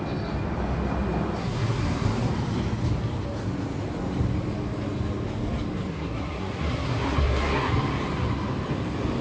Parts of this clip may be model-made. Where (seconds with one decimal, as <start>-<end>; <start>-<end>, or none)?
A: 1.4-2.3; 5.9-7.7